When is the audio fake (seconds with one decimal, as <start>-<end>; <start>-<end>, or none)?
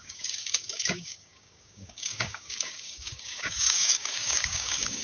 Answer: 0.0-5.0